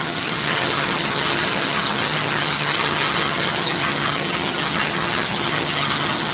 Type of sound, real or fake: fake